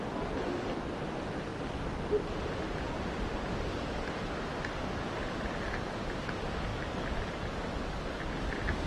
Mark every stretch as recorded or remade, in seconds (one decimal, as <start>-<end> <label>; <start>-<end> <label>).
0.0-8.9 recorded